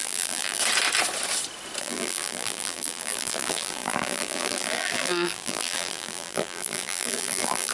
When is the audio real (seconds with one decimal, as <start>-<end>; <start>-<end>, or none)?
0.6-1.8